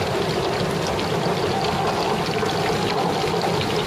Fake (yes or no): no